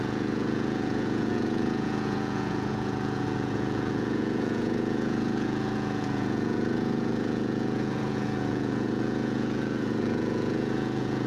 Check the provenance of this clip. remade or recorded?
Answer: remade